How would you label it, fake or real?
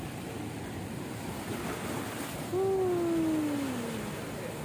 real